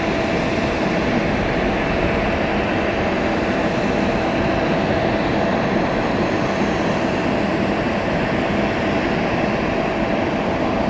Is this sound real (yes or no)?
yes